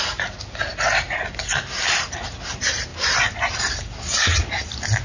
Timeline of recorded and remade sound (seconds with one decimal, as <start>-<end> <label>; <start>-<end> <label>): 0.0-5.0 recorded